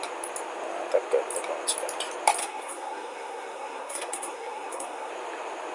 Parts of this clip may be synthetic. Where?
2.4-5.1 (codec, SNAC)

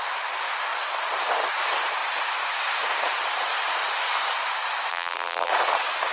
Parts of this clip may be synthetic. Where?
4.9-5.5 (vocoder, BigVGAN v2)

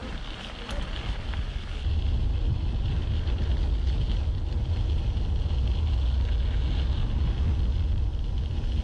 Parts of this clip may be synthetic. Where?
0.0-1.7 (vocoder, BigVGAN v2); 3.0-3.7